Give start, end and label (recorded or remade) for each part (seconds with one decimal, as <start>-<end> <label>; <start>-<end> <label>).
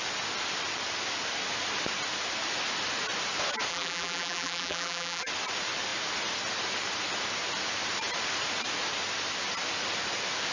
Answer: 0.0-3.7 recorded; 3.7-5.2 remade; 5.2-10.5 recorded